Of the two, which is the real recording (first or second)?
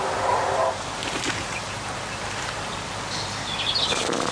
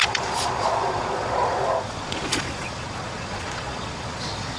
first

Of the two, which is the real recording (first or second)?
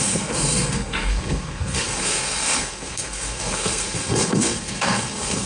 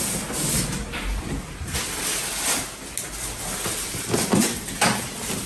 second